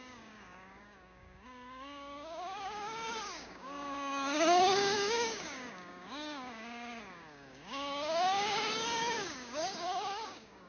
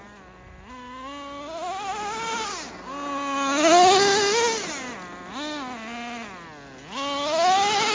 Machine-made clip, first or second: first